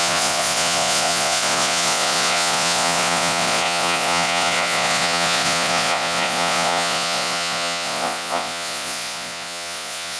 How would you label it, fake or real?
fake